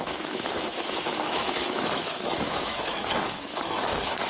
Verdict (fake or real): fake